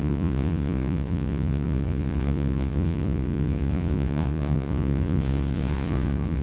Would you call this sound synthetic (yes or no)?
yes